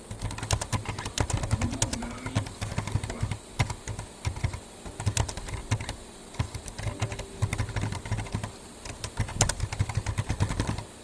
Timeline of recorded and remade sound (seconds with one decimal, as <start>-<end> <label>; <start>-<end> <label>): 0.0-11.0 recorded